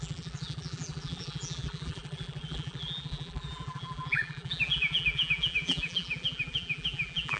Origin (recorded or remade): remade